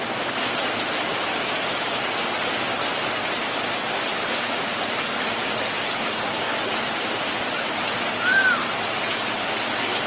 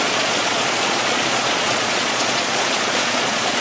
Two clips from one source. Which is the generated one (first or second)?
second